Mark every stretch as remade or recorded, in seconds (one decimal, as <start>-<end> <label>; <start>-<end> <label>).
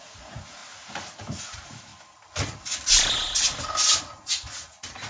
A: 0.0-0.6 remade; 0.6-1.4 recorded; 1.4-1.9 remade; 1.9-4.0 recorded; 4.0-5.1 remade